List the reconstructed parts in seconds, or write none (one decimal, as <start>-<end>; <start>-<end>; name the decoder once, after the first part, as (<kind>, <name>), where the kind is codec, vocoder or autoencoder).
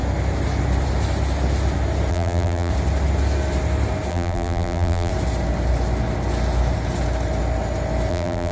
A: 2.1-2.7 (vocoder, BigVGAN v2); 4.1-5.1; 8.1-8.5